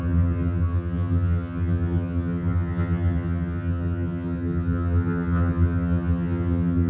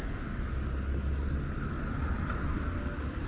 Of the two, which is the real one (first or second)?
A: second